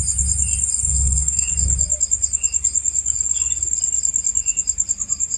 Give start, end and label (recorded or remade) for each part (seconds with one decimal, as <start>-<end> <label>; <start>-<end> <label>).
0.0-0.9 recorded; 0.9-1.5 remade; 1.5-5.4 recorded